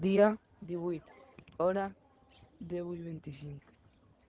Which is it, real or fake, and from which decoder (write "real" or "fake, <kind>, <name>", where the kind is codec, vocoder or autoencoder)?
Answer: fake, vocoder, HiFi-GAN